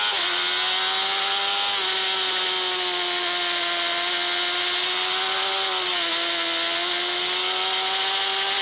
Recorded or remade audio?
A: recorded